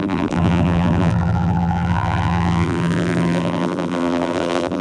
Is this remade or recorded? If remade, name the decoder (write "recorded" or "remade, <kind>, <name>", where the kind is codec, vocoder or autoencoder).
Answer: remade, vocoder, BigVGAN v2